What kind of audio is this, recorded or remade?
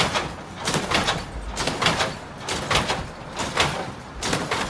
recorded